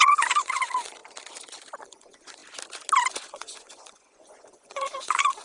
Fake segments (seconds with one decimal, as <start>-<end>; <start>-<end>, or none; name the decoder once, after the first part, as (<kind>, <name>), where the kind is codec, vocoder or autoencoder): 0.0-1.0 (vocoder, Vocos); 1.8-2.4; 3.1-5.4